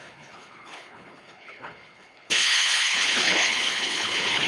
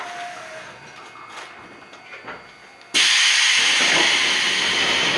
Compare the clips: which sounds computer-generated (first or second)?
first